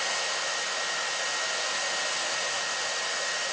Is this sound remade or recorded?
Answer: recorded